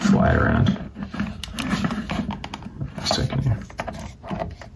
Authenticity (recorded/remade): recorded